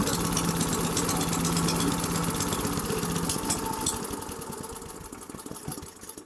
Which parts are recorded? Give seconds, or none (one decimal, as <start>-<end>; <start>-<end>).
0.0-6.3